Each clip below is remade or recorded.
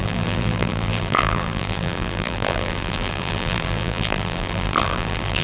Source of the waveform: remade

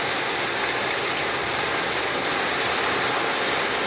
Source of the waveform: recorded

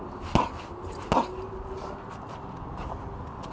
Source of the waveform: recorded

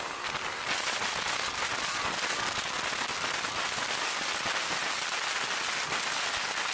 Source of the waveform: recorded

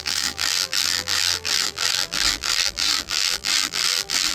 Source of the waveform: remade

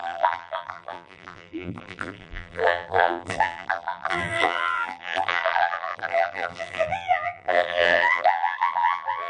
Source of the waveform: remade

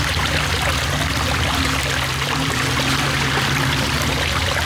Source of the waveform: recorded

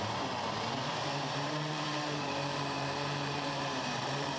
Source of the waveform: remade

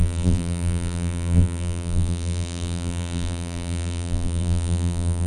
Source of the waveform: remade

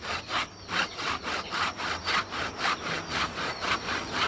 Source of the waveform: recorded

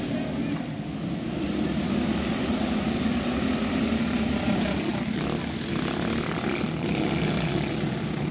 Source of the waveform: recorded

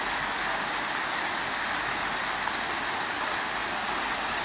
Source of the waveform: recorded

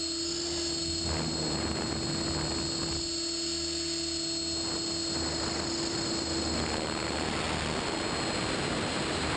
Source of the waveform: recorded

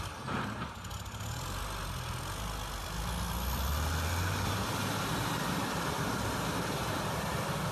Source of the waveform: recorded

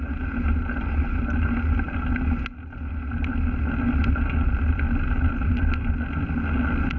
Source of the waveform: recorded